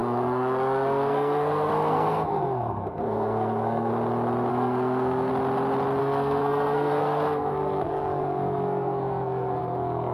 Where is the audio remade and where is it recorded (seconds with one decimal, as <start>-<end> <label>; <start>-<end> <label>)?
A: 0.0-3.9 remade; 3.9-4.5 recorded; 4.5-5.3 remade; 5.3-6.0 recorded; 6.0-10.1 remade